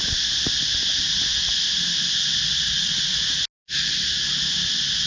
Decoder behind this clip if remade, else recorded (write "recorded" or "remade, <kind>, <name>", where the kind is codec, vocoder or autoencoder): recorded